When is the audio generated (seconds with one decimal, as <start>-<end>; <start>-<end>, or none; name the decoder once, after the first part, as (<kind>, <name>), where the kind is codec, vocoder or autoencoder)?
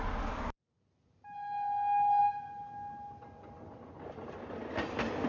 none